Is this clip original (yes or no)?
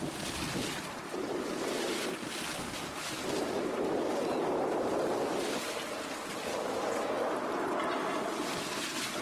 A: yes